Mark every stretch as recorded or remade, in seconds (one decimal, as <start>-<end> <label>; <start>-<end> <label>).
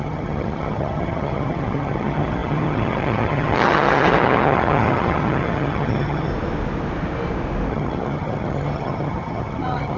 0.0-6.3 remade; 6.3-7.7 recorded; 7.7-10.0 remade